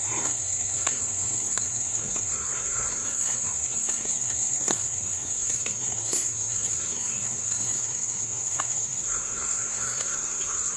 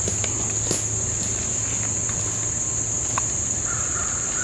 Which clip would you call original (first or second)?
second